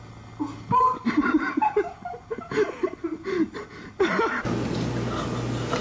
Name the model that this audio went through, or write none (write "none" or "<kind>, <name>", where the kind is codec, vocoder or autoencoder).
none